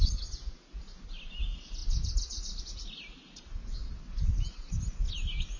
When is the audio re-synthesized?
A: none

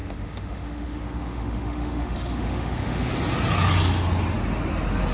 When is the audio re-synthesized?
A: 0.0-3.1 (autoencoder, DAC-VAE)

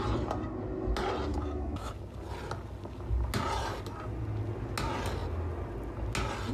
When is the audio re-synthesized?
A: 1.3-1.9 (autoencoder, DAC-VAE)

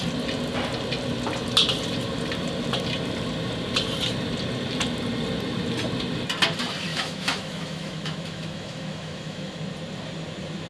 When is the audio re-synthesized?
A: 6.9-9.6 (autoencoder, DAC-VAE)

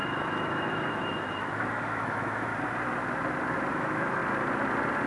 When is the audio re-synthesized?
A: 0.0-2.5 (autoencoder, DAC-VAE); 3.7-4.2

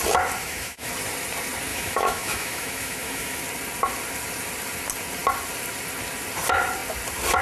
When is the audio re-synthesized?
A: 0.4-0.9 (autoencoder, DAC-VAE); 1.7-3.4

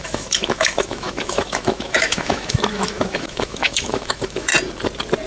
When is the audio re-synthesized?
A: 0.0-4.5 (autoencoder, DAC-VAE)

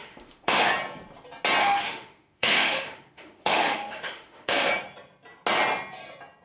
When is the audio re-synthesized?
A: 0.0-0.7 (autoencoder, DAC-VAE); 1.6-4.7